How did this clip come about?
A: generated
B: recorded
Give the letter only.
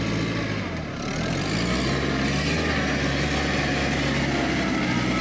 B